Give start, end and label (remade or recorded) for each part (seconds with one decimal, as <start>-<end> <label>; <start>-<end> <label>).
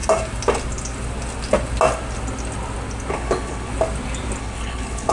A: 0.0-3.1 recorded; 3.1-3.7 remade; 3.7-4.4 recorded; 4.4-5.1 remade